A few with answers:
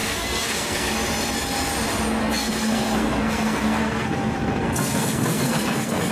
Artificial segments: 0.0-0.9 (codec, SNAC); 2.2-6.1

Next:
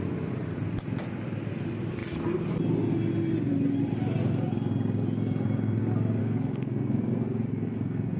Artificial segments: 6.2-8.2 (codec, SNAC)

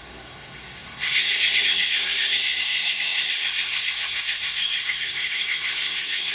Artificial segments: 0.0-6.3 (codec, SNAC)

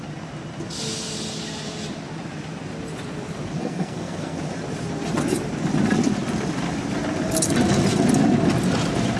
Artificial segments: 3.6-4.4 (codec, SNAC)

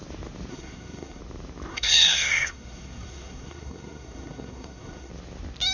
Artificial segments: 0.5-1.2 (codec, SNAC); 1.7-5.1